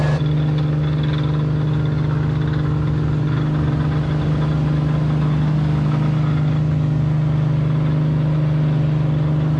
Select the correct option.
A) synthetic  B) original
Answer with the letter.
B